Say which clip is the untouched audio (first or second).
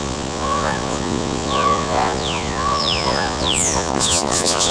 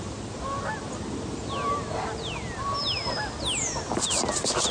second